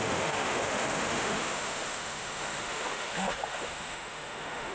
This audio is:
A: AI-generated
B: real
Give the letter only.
A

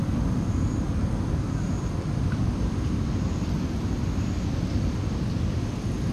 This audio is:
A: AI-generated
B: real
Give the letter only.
B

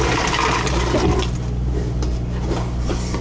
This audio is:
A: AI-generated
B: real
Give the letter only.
B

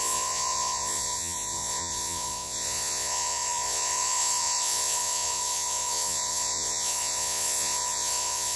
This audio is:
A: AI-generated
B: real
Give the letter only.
A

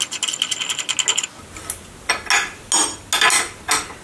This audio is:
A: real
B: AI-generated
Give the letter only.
A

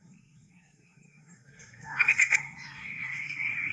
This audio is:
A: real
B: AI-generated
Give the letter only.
B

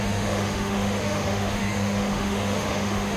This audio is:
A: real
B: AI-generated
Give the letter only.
B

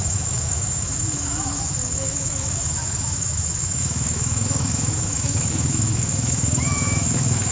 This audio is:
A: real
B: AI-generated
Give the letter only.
B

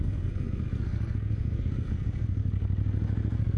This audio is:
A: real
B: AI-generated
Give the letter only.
B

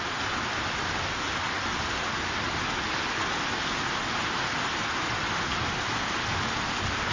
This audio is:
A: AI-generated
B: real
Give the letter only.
B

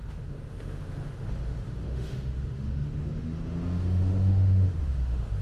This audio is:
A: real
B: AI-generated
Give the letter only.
B